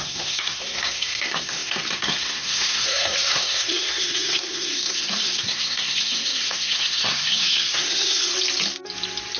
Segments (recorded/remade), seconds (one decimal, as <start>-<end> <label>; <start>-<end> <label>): 0.0-8.3 remade; 8.3-9.4 recorded